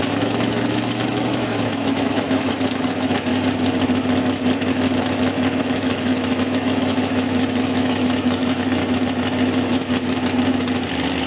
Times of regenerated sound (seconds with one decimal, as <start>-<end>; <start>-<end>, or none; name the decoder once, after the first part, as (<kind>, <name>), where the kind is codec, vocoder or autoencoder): 0.0-3.3 (autoencoder, DAC-VAE); 5.6-8.8; 9.7-10.2